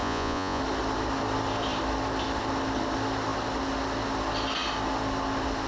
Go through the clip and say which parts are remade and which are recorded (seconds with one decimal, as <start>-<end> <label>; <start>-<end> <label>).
0.0-0.6 remade; 0.6-5.7 recorded